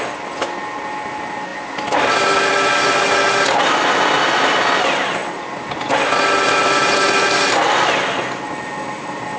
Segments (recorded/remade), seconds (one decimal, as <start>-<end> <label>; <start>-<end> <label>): 0.0-9.4 recorded